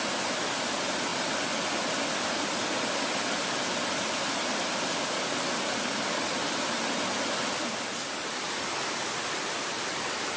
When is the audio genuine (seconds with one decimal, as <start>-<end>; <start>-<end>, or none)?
0.0-10.4